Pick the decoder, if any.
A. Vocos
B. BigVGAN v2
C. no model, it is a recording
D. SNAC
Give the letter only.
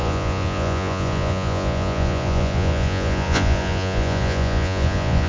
A